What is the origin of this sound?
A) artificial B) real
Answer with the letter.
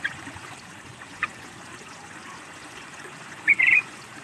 A